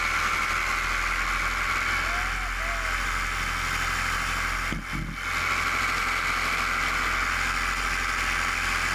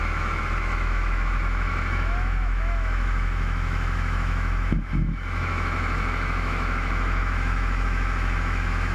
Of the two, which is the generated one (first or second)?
second